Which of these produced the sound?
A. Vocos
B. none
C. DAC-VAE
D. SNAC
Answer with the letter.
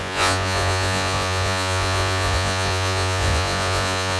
A